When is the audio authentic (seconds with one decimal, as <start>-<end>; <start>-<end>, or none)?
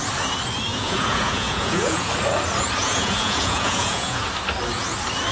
0.0-0.7; 2.1-2.8; 4.3-5.3